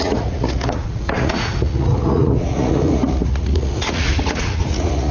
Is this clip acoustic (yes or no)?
no